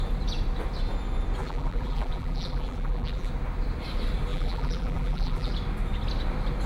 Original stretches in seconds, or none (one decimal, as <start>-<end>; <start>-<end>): 0.0-1.4; 3.3-4.3; 5.5-6.7